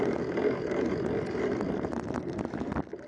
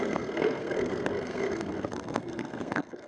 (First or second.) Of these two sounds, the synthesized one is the second